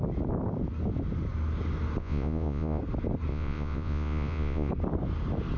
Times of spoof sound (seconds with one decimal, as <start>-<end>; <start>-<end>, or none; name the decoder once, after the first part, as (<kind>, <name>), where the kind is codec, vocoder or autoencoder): 2.0-2.8 (vocoder, Vocos); 3.3-4.7